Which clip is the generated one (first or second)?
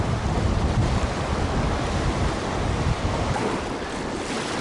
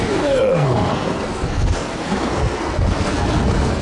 second